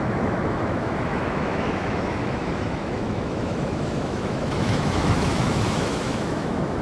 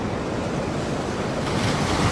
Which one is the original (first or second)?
second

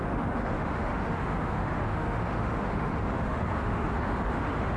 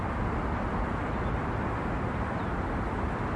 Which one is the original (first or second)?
second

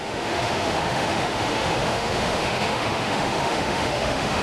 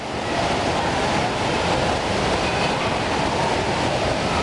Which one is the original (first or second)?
second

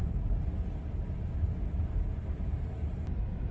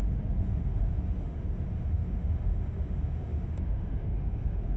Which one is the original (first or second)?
first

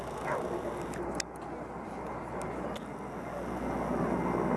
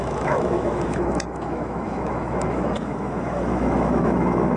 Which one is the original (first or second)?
first